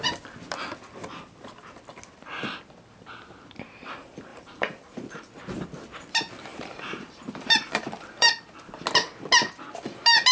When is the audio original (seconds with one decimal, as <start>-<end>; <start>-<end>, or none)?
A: 0.0-4.3; 5.2-6.5; 8.4-10.3